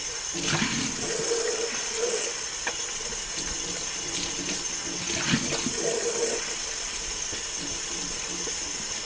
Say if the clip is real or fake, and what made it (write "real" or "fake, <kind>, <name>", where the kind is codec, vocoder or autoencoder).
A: real